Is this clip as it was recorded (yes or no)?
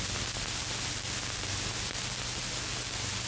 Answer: yes